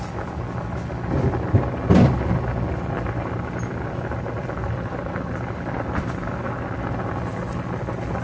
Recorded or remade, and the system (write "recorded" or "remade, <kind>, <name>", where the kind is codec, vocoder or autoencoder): recorded